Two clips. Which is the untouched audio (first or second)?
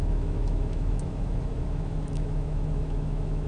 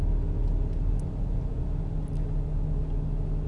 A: second